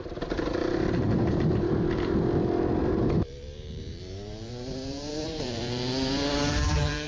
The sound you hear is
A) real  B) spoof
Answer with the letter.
B